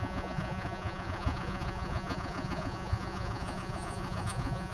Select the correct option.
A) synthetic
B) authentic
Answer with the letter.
A